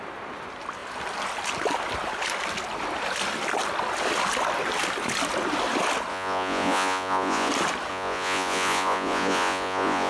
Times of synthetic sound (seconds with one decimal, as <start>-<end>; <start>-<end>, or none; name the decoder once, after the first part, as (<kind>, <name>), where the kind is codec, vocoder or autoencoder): 6.1-7.5 (vocoder, Vocos); 7.9-10.1